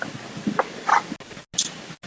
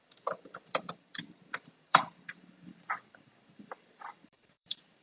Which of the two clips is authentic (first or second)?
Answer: first